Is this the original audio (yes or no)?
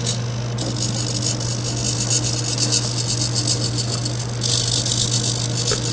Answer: yes